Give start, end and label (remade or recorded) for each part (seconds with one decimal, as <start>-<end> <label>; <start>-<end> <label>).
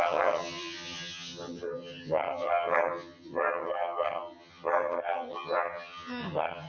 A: 0.0-6.7 remade